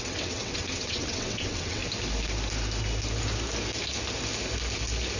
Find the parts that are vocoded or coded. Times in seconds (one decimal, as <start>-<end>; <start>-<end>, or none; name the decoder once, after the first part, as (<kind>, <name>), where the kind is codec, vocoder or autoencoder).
0.0-1.8 (vocoder, WaveNeXt)